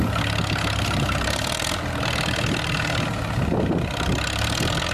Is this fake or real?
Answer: real